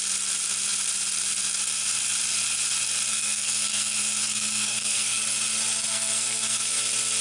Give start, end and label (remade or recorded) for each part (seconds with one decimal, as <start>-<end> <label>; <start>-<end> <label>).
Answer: 0.0-3.1 recorded; 3.1-5.2 remade; 5.2-5.9 recorded; 5.9-6.8 remade; 6.8-7.2 recorded